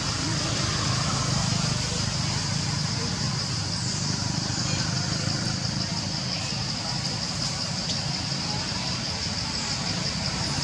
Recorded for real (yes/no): yes